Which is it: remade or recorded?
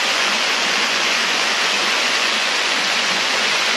remade